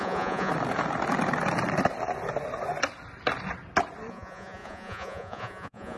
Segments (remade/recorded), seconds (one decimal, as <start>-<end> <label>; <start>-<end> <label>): 0.0-0.5 remade; 0.5-4.1 recorded; 4.1-6.0 remade